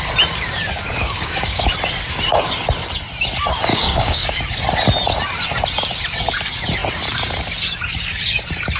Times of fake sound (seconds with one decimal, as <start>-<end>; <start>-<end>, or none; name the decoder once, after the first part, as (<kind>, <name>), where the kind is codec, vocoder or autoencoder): 0.9-1.7 (codec, DAC); 3.7-4.4